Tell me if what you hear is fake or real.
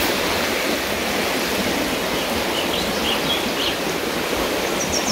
real